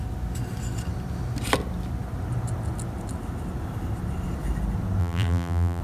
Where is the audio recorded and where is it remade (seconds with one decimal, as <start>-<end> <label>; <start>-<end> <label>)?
0.0-5.0 recorded; 5.0-5.8 remade